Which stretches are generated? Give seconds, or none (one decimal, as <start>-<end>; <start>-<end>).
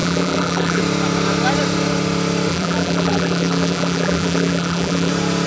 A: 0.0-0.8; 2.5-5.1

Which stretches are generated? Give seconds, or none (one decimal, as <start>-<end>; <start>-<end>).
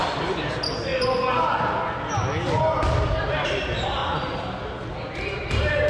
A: 0.0-0.9; 2.6-4.0; 4.9-5.9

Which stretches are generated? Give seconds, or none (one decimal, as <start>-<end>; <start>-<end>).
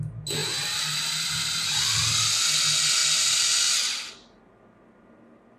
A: 0.4-1.8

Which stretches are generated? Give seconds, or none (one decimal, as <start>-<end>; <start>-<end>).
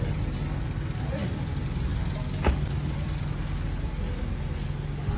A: none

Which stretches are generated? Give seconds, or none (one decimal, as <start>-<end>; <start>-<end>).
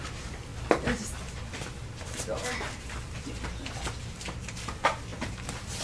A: 0.0-0.5; 4.0-5.8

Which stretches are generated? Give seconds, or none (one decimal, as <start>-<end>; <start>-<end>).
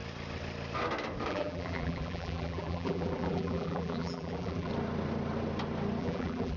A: 1.3-4.7; 6.0-6.6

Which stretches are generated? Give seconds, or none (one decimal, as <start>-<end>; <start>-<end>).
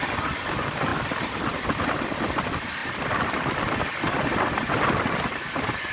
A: 0.9-2.4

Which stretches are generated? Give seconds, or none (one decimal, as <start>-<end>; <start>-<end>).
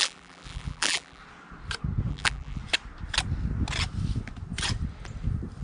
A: 0.0-1.2; 2.1-2.6